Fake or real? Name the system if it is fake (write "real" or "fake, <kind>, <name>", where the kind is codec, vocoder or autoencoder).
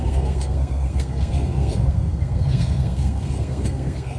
fake, codec, SNAC